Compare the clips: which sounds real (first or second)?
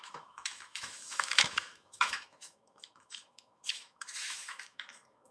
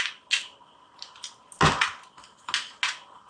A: second